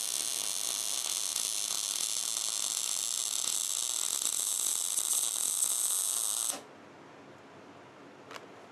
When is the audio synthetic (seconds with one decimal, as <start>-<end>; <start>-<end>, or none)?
none